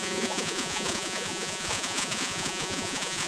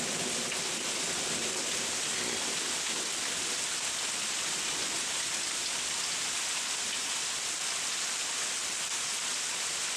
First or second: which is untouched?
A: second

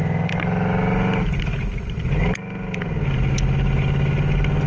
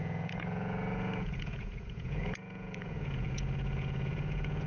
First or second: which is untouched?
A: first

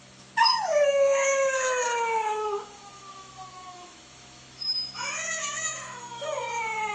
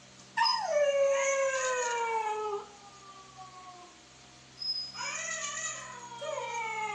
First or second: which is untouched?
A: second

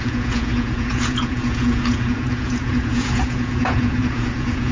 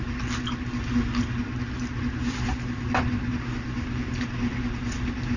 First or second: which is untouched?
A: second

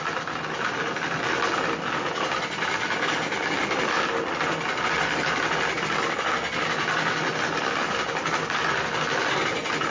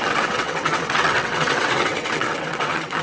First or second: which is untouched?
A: first